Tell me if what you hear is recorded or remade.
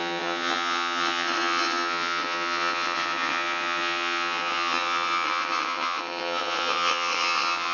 remade